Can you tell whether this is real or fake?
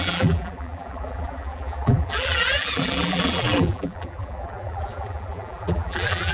fake